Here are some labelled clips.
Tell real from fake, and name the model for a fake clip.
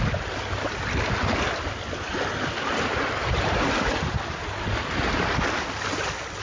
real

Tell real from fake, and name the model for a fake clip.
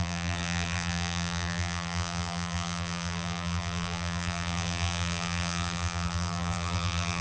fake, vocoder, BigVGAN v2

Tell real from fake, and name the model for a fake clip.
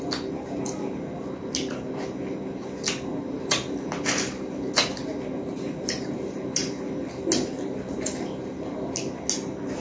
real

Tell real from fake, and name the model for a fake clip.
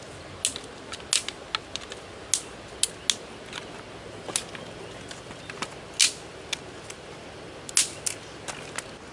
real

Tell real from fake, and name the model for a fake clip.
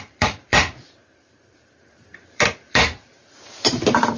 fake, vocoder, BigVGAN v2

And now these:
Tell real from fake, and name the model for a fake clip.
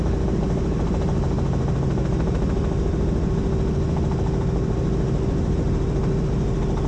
real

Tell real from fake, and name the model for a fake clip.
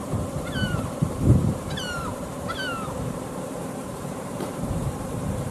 fake, vocoder, BigVGAN v2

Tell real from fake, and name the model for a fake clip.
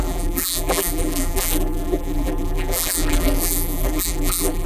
fake, vocoder, BigVGAN v2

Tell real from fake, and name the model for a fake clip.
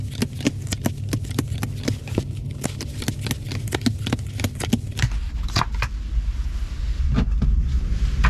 real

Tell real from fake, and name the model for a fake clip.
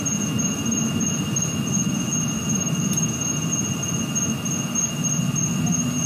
real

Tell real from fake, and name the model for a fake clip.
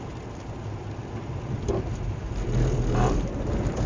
fake, vocoder, BigVGAN v2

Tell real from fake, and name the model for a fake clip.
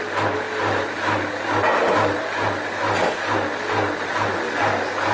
real